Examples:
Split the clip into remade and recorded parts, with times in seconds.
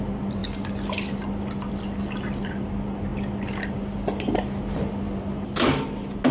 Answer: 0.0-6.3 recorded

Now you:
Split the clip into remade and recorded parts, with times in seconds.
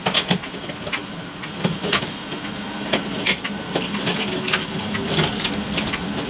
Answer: 0.0-1.7 recorded; 1.7-5.5 remade; 5.5-6.3 recorded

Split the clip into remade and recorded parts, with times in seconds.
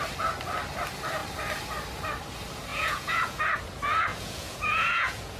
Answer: 0.0-2.7 recorded; 2.7-3.4 remade; 3.4-4.1 recorded; 4.1-5.4 remade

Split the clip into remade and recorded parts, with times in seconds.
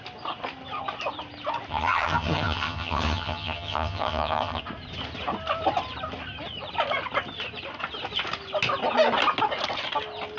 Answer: 0.0-1.7 recorded; 1.7-4.6 remade; 4.6-10.4 recorded